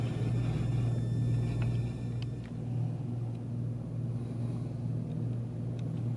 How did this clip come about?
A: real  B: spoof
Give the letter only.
A